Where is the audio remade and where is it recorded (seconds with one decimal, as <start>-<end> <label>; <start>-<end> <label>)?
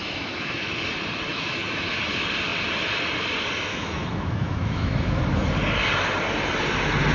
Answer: 0.0-0.8 remade; 0.8-1.3 recorded; 1.3-2.0 remade; 2.0-3.7 recorded; 3.7-5.2 remade; 5.2-7.1 recorded